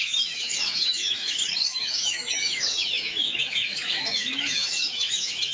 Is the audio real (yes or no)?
no